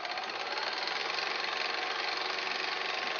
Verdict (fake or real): real